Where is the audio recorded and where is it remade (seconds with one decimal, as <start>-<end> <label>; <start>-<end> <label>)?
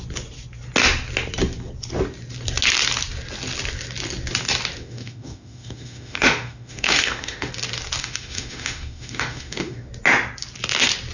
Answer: 0.0-4.8 recorded; 4.8-7.5 remade; 7.5-8.0 recorded; 8.0-9.9 remade; 9.9-11.1 recorded